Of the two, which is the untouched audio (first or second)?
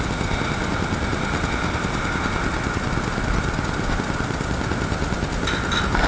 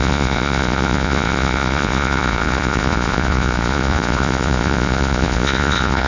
first